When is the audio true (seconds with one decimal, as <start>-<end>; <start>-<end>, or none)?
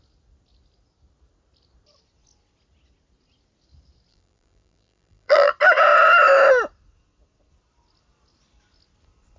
0.0-4.1; 5.5-9.4